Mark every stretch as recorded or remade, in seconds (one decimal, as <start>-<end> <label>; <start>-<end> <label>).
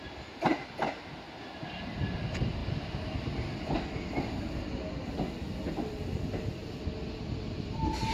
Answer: 0.0-8.1 recorded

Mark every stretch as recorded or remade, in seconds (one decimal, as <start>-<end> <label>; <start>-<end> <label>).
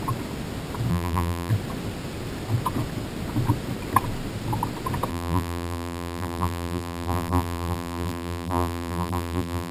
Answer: 0.0-0.9 recorded; 0.9-1.5 remade; 1.5-5.1 recorded; 5.1-9.7 remade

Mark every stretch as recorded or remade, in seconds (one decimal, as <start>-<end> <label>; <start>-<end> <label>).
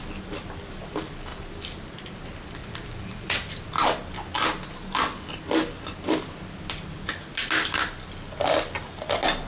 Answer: 0.0-1.3 recorded; 1.3-2.2 remade; 2.2-2.6 recorded; 2.6-3.5 remade; 3.5-9.5 recorded